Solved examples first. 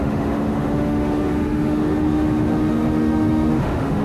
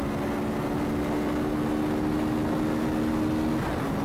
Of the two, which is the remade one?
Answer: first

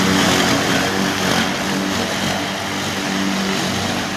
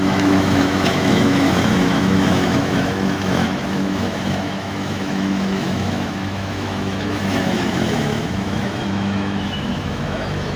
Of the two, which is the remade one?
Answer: second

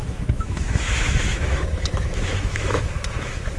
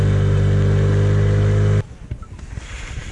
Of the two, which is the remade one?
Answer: first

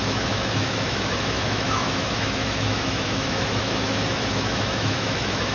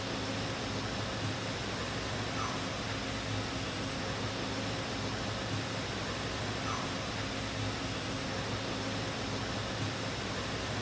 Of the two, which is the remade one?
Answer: first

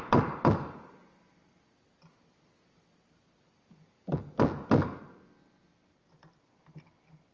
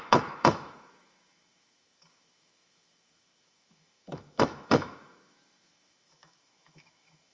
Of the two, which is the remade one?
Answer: second